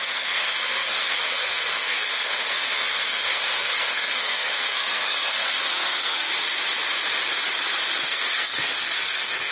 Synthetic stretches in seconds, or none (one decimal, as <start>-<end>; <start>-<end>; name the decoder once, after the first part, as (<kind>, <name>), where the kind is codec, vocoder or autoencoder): 0.0-6.3 (codec, SNAC); 8.0-9.5